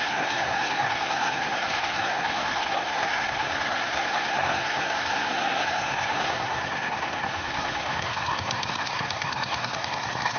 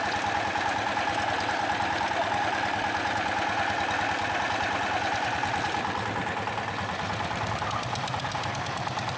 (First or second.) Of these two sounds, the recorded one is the second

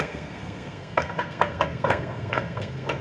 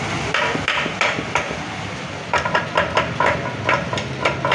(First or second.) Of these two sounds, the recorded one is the second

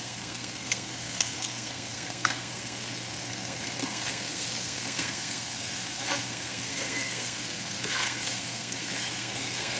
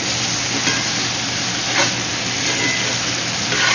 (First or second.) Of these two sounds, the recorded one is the second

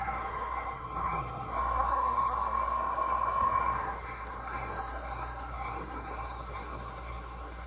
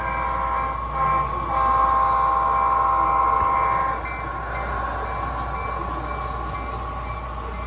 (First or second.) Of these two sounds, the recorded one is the second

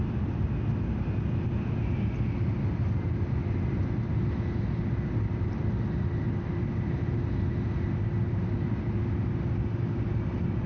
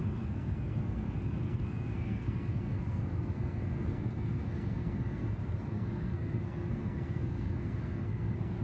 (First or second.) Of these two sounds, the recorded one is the first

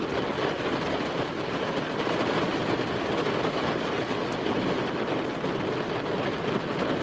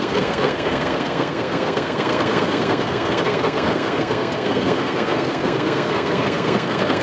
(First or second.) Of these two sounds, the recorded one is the first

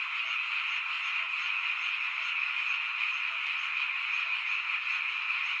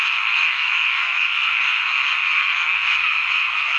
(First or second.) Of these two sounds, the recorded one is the first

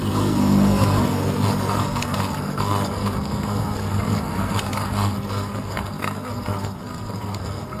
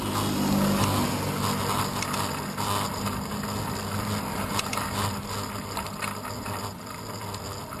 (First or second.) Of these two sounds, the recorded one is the second